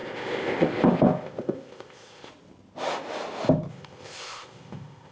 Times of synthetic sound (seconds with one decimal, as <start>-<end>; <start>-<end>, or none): 0.0-2.3; 3.7-5.1